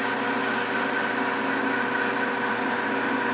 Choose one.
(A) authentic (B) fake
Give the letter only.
A